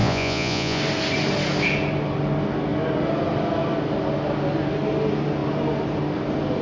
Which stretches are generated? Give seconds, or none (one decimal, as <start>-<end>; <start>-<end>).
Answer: 0.0-0.8